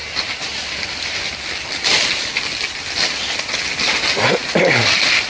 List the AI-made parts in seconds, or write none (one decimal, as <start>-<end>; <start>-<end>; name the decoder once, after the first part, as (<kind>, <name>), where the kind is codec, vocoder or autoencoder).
none